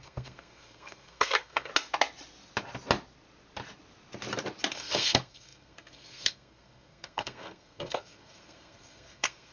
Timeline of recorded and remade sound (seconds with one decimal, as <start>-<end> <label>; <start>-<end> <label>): 0.0-1.7 remade; 1.7-4.7 recorded; 4.7-9.5 remade